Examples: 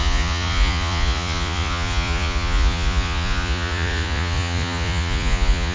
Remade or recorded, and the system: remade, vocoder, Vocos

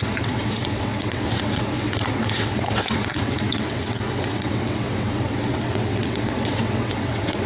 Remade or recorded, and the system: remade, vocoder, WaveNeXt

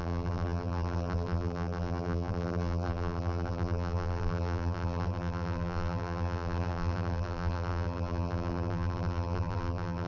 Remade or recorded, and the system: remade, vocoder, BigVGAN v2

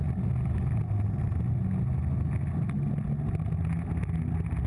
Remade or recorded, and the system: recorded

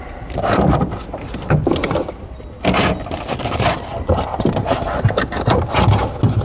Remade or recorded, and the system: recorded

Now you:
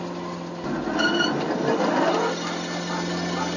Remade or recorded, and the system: recorded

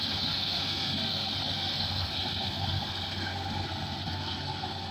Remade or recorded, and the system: remade, codec, SNAC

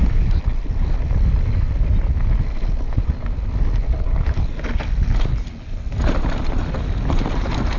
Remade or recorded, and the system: recorded